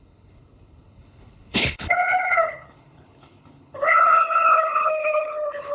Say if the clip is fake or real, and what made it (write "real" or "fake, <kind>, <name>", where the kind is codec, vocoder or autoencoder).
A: fake, codec, HILCodec